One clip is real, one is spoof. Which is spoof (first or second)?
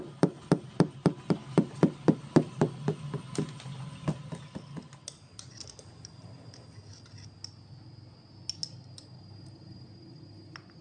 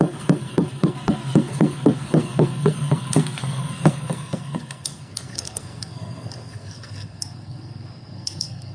second